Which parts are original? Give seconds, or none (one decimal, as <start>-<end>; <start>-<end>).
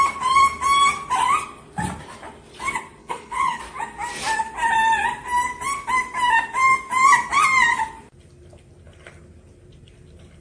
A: 0.0-3.0; 3.6-10.4